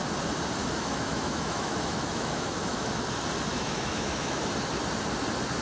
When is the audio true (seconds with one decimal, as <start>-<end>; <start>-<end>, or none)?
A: 0.0-0.6; 2.9-3.5; 4.4-5.6